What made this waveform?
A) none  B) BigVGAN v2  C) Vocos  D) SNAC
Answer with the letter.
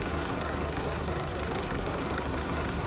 D